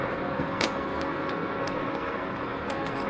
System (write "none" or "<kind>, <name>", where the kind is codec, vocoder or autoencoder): codec, SNAC